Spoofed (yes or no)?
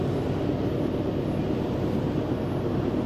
no